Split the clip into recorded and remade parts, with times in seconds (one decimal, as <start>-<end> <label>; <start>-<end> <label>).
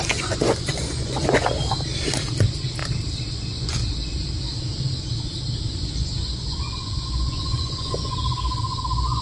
0.0-1.6 remade; 1.6-2.4 recorded; 2.4-2.8 remade; 2.8-3.3 recorded; 3.3-3.8 remade; 3.8-5.9 recorded; 5.9-9.2 remade